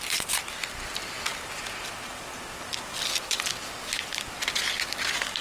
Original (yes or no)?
yes